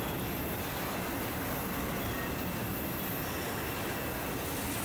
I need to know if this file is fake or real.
real